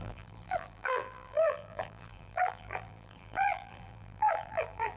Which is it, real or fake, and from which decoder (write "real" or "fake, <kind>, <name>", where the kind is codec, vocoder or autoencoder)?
fake, vocoder, BigVGAN v2